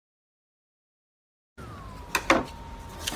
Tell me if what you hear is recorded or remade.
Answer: recorded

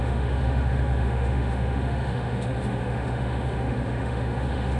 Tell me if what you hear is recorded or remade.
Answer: remade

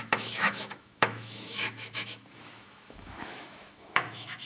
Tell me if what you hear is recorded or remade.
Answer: remade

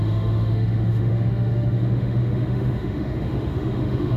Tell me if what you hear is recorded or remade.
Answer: remade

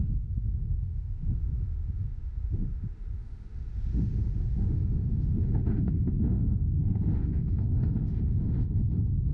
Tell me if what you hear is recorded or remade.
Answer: remade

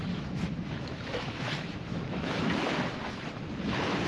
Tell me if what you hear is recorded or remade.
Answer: remade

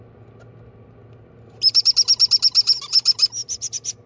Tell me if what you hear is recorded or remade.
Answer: recorded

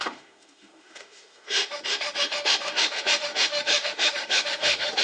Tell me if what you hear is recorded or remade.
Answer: remade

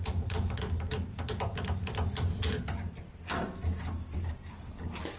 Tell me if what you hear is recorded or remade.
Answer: recorded